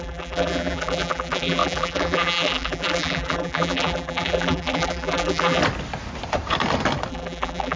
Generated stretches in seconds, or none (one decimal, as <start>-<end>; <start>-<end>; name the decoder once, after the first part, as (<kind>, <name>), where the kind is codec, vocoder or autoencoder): 0.0-5.6 (vocoder, BigVGAN v2); 7.1-7.8